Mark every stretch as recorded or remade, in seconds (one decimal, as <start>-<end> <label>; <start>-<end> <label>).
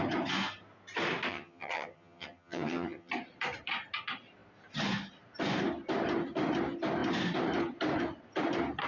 0.0-1.3 recorded; 1.3-3.1 remade; 3.1-8.9 recorded